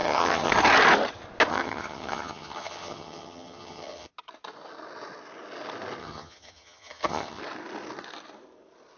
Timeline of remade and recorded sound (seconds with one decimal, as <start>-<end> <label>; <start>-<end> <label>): 0.0-0.5 remade; 0.5-1.5 recorded; 1.5-4.1 remade; 4.1-6.0 recorded; 6.0-7.4 remade; 7.4-9.0 recorded